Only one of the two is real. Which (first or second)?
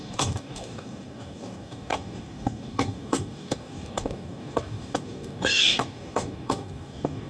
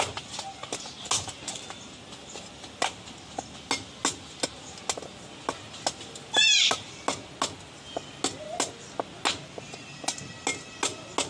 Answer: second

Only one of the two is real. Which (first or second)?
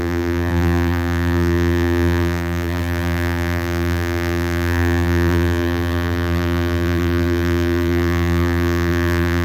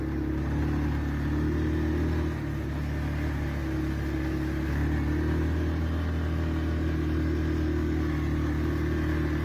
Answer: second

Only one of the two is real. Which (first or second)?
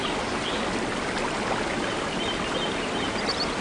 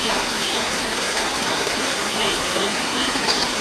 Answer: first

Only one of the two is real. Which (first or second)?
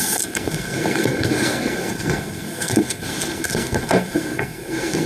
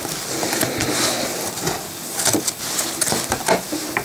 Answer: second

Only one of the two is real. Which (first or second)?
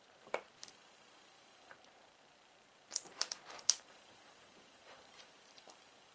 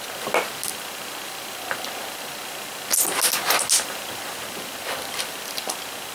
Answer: second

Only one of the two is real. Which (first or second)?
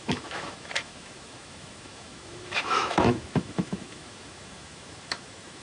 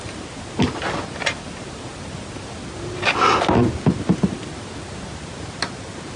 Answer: second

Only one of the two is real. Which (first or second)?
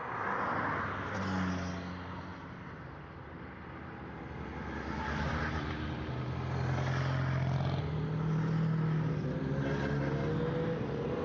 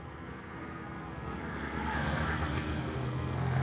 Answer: first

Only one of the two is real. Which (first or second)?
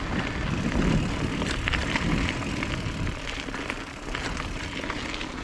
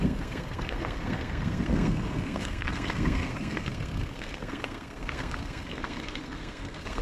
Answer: first